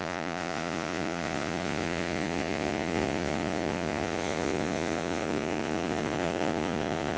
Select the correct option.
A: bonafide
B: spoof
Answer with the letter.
B